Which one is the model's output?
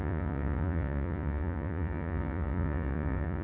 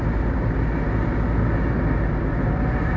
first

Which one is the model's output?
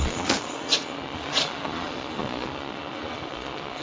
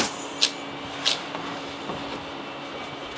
first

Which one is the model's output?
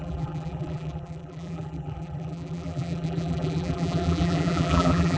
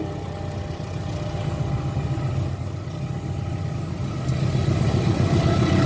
first